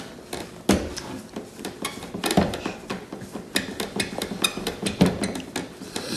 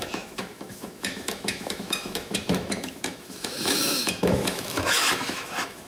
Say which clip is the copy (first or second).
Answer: second